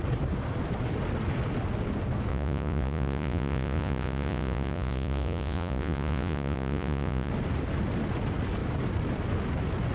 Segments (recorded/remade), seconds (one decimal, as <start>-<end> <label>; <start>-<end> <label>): 0.0-2.3 recorded; 2.3-7.3 remade; 7.3-9.9 recorded